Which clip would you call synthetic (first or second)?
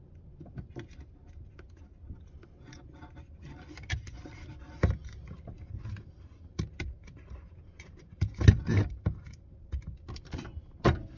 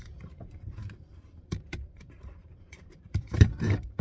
second